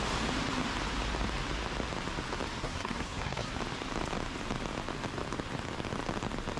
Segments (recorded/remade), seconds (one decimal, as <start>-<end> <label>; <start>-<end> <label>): 0.0-2.6 recorded; 2.6-3.6 remade; 3.6-6.6 recorded